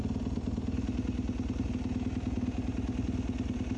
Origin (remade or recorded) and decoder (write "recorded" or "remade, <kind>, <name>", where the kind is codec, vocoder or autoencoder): recorded